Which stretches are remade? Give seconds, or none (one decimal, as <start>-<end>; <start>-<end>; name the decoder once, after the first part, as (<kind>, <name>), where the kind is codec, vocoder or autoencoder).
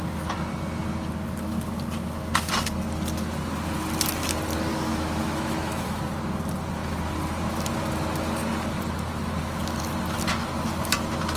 4.7-6.0 (autoencoder, DAC-VAE)